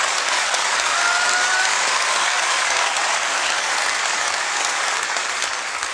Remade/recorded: remade